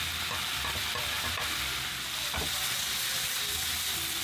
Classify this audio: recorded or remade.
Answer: recorded